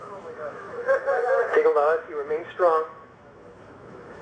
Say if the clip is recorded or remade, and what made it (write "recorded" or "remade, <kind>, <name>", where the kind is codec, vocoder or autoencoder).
remade, autoencoder, DAC-VAE